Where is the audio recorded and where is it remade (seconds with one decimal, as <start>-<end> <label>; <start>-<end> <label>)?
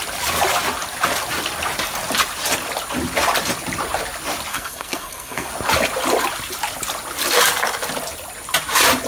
0.0-4.5 recorded; 4.5-5.5 remade; 5.5-9.1 recorded